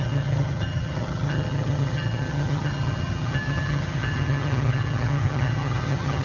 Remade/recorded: remade